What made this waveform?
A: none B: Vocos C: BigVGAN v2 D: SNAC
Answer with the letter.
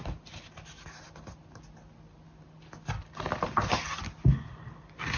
A